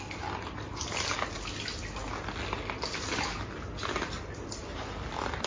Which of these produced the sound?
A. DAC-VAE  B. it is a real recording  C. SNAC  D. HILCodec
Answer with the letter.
B